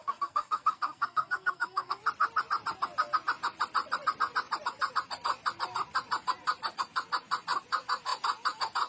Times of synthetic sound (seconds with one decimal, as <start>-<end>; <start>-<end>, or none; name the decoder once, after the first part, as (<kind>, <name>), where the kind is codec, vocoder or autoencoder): 0.0-2.0 (codec, SNAC)